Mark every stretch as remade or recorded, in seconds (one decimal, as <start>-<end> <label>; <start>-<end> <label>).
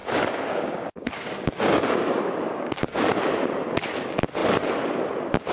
0.0-3.1 remade; 3.1-5.5 recorded